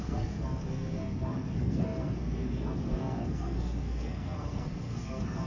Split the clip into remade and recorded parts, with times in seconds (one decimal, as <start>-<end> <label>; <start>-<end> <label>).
0.0-5.5 remade